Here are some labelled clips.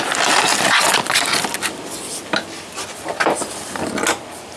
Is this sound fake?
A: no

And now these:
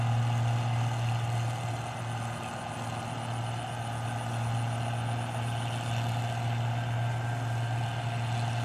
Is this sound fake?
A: no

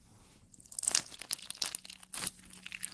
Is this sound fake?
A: no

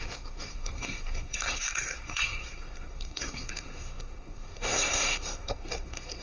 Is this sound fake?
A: yes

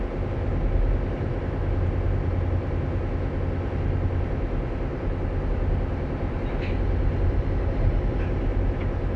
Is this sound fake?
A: no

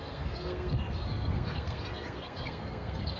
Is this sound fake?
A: yes